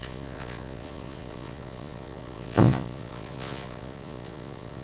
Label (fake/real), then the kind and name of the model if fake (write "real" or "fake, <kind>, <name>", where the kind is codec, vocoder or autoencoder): fake, vocoder, Vocos